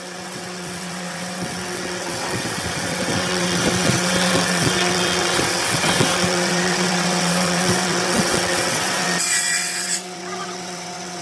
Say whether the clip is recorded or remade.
remade